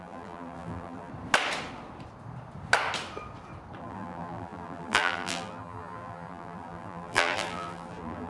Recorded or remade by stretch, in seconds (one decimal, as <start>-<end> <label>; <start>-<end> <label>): 0.0-1.1 remade; 1.1-3.8 recorded; 3.8-8.3 remade